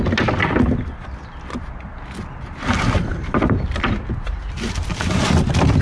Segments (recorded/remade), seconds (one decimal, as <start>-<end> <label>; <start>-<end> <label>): 0.0-3.1 recorded; 3.1-4.0 remade; 4.0-5.8 recorded